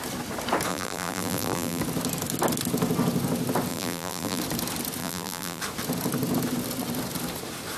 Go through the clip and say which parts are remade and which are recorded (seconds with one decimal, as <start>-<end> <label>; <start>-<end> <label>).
0.0-0.7 recorded; 0.7-1.8 remade; 1.8-3.7 recorded; 3.7-4.4 remade; 4.4-5.0 recorded; 5.0-5.6 remade; 5.6-7.8 recorded